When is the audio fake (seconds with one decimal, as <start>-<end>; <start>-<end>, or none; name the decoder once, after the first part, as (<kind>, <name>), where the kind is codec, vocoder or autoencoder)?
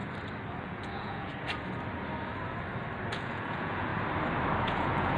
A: 0.6-1.3 (vocoder, Vocos); 3.1-3.9; 4.6-5.2